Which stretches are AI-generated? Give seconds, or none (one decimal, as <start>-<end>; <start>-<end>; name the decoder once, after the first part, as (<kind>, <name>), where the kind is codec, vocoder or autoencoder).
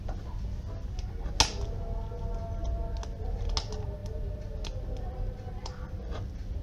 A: none